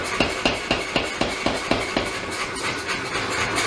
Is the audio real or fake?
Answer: real